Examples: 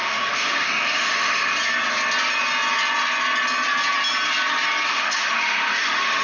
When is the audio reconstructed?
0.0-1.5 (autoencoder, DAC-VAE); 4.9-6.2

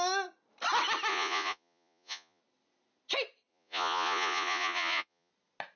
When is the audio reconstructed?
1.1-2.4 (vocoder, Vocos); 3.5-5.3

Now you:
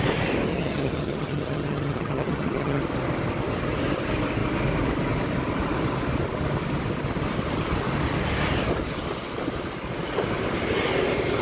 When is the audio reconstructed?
0.5-2.8 (vocoder, HiFi-GAN)

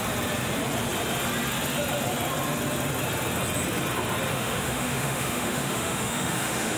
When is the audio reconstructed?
4.3-6.8 (autoencoder, DAC-VAE)

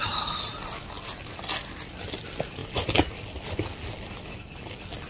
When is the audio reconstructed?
none

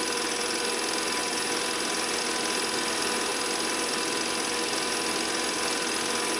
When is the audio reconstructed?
none